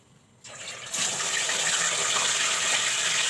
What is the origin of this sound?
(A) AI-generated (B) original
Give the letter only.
B